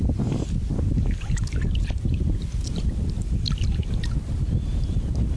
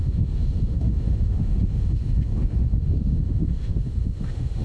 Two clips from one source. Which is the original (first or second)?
first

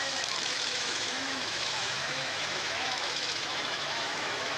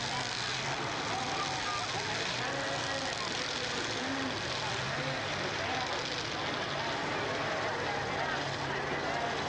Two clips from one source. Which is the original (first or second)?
second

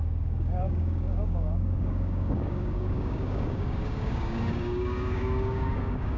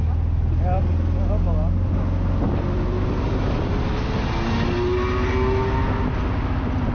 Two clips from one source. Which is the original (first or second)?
second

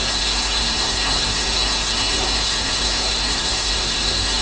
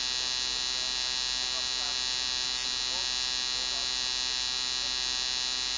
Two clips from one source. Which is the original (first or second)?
second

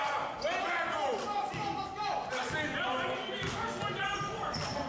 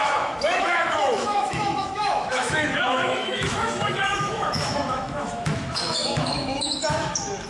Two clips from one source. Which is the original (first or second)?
first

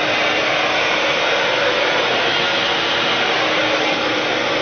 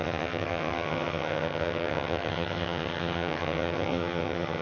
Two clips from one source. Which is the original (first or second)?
first